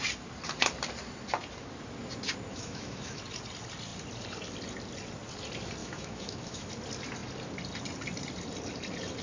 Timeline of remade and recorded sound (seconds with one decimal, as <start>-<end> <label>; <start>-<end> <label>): 0.0-2.5 recorded; 2.5-3.2 remade; 3.2-5.8 recorded; 5.8-6.7 remade; 6.7-9.2 recorded